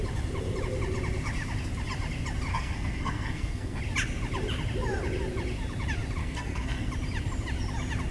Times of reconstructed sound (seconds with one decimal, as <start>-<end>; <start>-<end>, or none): 2.5-3.8; 6.2-6.9

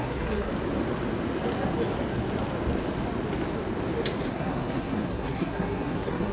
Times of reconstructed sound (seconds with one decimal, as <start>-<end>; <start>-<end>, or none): 0.0-0.5; 4.3-6.3